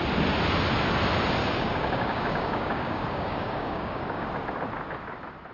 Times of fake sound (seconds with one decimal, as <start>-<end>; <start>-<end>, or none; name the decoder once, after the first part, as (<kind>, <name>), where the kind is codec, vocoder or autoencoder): 1.4-4.3 (codec, DAC)